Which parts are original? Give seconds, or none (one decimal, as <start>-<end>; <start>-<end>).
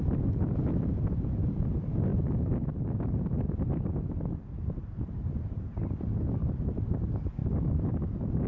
0.0-2.1; 4.9-6.4; 6.9-8.5